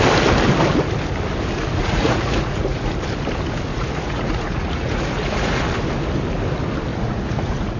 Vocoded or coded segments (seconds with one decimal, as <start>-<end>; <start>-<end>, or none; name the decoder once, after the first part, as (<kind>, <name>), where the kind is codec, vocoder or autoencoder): 1.8-2.9 (vocoder, Vocos); 3.7-5.6; 6.9-7.8